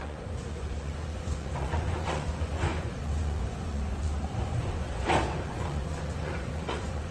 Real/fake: fake